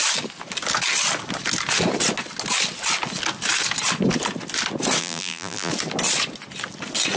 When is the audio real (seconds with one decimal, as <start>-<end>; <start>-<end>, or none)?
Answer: 0.0-5.0; 5.7-7.2